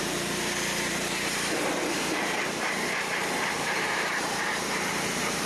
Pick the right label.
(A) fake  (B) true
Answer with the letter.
A